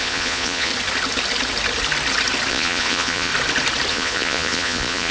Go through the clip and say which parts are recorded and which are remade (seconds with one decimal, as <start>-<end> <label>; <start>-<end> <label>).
0.0-0.7 remade; 0.7-2.5 recorded; 2.5-3.3 remade; 3.3-3.9 recorded; 3.9-5.1 remade